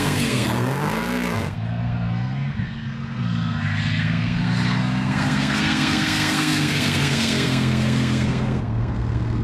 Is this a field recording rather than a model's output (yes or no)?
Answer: no